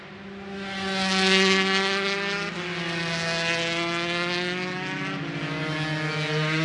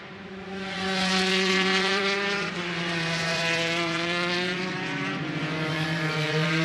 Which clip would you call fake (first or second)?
second